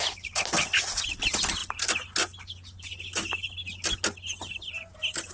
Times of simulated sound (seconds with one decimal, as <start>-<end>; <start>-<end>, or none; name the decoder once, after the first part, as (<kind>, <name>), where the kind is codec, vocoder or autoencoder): none

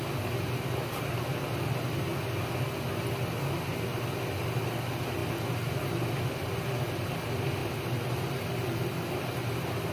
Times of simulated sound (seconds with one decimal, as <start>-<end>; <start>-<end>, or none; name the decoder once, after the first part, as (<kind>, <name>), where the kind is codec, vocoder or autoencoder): 5.2-6.2 (vocoder, BigVGAN v2); 7.6-9.9

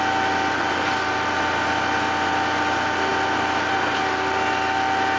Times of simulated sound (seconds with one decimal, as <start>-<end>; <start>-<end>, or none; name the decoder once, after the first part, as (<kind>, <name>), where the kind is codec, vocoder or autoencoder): none

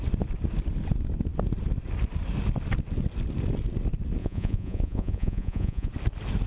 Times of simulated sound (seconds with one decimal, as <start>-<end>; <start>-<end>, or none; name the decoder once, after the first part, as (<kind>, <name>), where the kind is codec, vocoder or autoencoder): 4.2-5.9 (vocoder, Vocos)

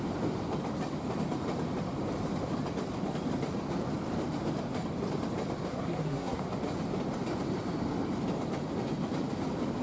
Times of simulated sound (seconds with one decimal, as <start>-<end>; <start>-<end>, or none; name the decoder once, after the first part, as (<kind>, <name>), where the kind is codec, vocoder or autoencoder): 5.7-6.4 (codec, SNAC)

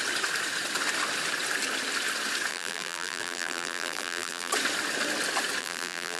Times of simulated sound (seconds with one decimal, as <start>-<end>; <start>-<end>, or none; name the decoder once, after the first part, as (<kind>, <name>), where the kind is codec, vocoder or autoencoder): 2.5-4.5 (vocoder, BigVGAN v2); 5.6-6.2

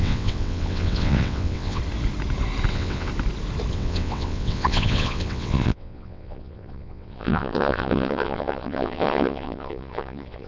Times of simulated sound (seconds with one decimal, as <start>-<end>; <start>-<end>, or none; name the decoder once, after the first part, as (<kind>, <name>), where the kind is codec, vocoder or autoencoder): 0.0-1.8 (vocoder, WaveNeXt); 2.7-3.1; 3.7-10.5

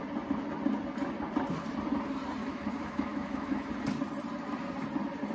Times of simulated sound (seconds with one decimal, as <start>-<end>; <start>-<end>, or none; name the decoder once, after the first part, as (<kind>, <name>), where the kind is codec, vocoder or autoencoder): 2.4-3.7 (autoencoder, DAC-VAE)